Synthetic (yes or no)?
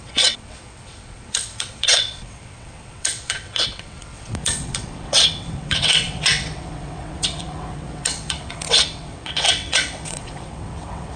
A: yes